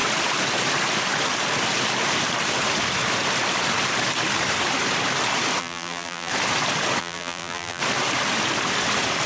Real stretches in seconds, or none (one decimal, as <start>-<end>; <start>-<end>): 0.0-5.6; 6.3-7.0; 7.8-9.3